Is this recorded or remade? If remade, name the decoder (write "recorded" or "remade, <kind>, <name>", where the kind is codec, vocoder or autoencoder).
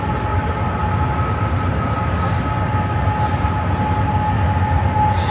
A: recorded